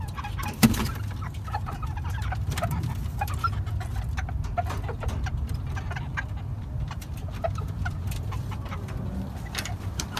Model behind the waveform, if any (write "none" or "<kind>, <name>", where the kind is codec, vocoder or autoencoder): vocoder, BigVGAN v2